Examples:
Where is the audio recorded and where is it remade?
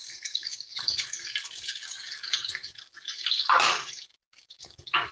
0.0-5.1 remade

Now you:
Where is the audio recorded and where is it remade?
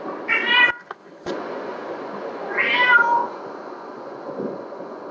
0.0-1.0 recorded; 1.0-2.6 remade; 2.6-3.2 recorded; 3.2-5.1 remade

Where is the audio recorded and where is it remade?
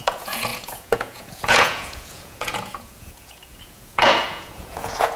0.0-5.2 remade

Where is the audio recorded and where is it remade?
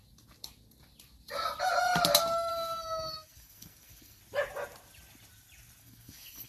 0.0-2.5 recorded; 2.5-4.2 remade; 4.2-5.8 recorded; 5.8-6.5 remade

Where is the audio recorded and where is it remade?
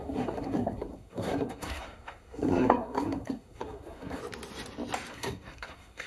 0.0-4.2 remade; 4.2-5.1 recorded; 5.1-6.1 remade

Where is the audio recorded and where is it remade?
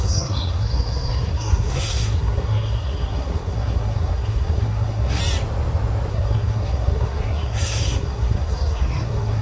0.0-5.2 remade; 5.2-6.1 recorded; 6.1-9.4 remade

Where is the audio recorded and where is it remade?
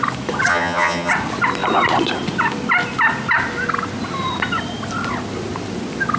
0.0-0.5 recorded; 0.5-1.1 remade; 1.1-6.2 recorded